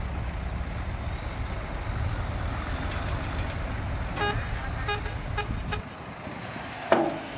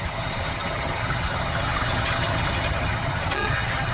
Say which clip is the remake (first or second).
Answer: second